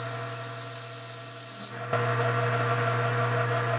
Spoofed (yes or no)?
no